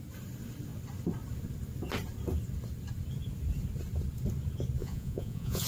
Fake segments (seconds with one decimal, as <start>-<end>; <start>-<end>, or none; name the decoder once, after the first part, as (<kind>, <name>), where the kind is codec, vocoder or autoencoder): 4.8-5.7 (vocoder, Vocos)

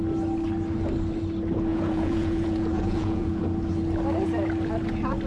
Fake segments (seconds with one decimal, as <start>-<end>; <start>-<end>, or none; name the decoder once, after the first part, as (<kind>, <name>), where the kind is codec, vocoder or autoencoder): 1.7-3.4 (vocoder, Vocos)